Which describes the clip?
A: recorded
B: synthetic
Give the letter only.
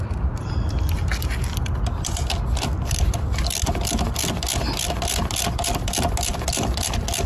A